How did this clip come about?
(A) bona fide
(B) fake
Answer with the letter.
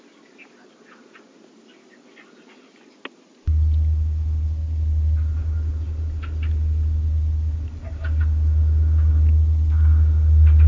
A